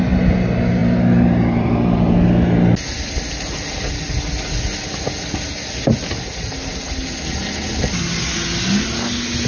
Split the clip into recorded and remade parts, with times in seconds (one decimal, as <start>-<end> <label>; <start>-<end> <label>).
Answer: 0.0-9.5 recorded